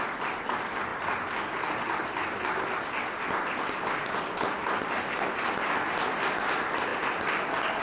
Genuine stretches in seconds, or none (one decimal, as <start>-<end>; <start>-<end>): 0.0-7.8